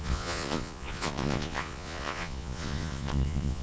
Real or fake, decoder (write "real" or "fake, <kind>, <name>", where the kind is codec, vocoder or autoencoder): fake, vocoder, Vocos